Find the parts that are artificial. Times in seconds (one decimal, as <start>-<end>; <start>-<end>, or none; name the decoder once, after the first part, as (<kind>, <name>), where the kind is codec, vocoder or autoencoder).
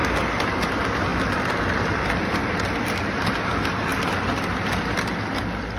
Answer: 0.7-3.9 (vocoder, BigVGAN v2)